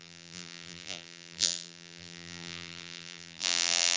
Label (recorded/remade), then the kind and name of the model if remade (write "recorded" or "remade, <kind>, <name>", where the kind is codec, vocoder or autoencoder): remade, vocoder, BigVGAN v2